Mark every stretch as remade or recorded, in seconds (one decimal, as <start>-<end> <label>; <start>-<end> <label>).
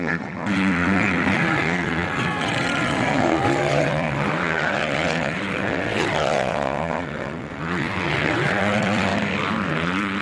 0.0-9.1 remade; 9.1-9.7 recorded; 9.7-10.2 remade